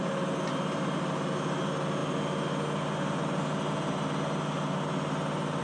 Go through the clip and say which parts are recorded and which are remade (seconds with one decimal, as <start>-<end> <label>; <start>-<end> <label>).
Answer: 0.0-5.6 recorded